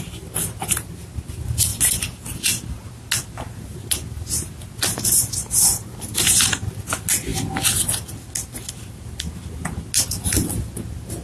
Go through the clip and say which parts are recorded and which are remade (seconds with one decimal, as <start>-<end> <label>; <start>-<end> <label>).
0.0-11.2 recorded